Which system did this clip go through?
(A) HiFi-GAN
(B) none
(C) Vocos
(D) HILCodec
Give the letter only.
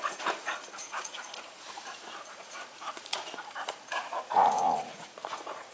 C